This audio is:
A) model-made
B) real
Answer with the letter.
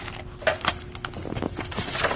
B